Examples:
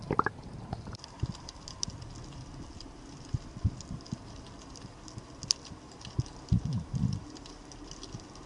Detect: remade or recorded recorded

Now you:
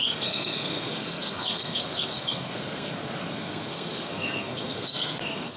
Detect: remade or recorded remade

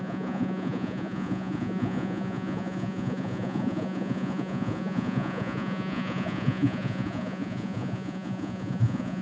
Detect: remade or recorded remade